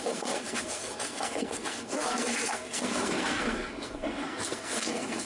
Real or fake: fake